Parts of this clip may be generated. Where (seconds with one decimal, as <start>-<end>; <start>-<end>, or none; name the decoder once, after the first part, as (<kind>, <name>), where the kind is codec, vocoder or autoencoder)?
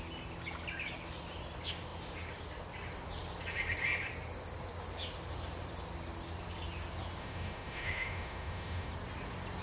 7.2-8.9 (autoencoder, DAC-VAE)